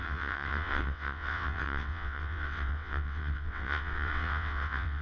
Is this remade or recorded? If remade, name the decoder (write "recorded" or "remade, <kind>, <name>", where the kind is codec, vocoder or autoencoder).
remade, vocoder, WaveNeXt